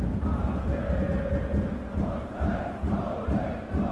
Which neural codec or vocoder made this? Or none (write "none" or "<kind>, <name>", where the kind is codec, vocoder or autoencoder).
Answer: none